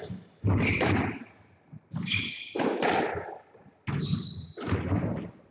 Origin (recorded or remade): recorded